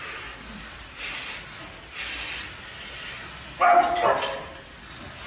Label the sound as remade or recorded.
recorded